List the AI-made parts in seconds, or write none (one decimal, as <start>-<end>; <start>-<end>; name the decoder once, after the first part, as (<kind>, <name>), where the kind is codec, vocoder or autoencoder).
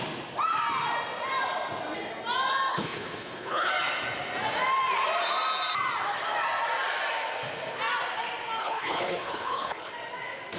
2.7-3.7 (codec, HILCodec); 8.6-9.9